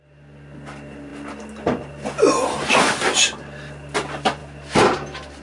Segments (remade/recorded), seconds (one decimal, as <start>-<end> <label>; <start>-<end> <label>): 0.0-5.4 recorded